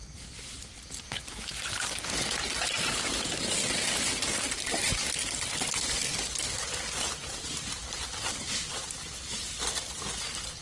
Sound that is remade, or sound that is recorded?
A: recorded